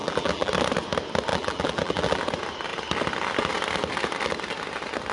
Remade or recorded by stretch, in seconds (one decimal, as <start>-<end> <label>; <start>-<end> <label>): 0.0-0.5 remade; 0.5-1.3 recorded; 1.3-2.2 remade; 2.2-5.1 recorded